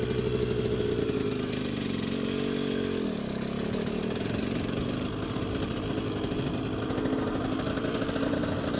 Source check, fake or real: real